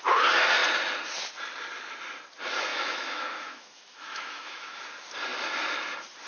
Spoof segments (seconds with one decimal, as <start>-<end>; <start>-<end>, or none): 2.7-4.8